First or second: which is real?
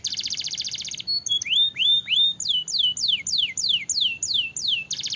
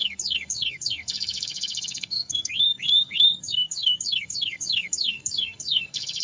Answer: first